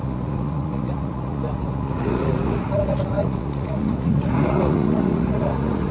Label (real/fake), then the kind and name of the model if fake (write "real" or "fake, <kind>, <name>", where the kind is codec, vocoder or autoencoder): fake, vocoder, Vocos